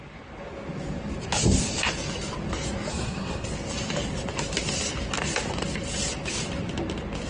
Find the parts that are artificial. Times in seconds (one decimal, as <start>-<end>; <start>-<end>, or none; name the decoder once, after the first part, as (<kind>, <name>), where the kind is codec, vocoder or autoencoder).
2.9-3.5 (codec, SNAC)